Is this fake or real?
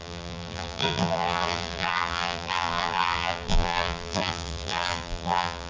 fake